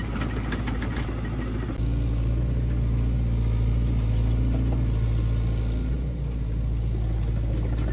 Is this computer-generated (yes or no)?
no